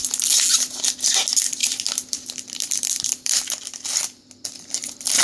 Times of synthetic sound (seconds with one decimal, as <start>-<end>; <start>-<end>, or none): 1.6-3.3

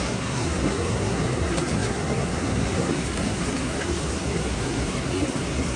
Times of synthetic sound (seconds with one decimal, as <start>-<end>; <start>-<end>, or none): 0.0-5.8

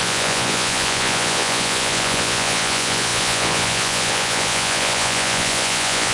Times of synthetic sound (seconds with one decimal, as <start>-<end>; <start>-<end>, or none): 0.0-6.1

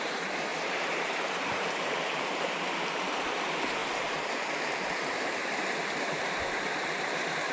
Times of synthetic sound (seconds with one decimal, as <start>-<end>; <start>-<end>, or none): 0.0-7.5